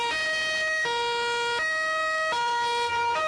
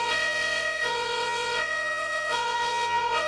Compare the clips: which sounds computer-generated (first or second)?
second